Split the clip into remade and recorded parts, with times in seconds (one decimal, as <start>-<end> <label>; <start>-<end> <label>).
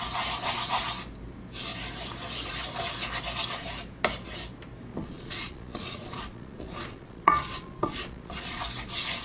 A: 0.0-4.9 recorded; 4.9-8.6 remade; 8.6-9.2 recorded